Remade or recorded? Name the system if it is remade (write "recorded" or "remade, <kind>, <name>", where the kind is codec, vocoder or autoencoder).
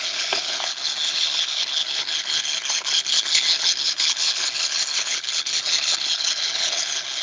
remade, codec, HILCodec